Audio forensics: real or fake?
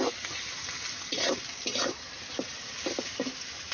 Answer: real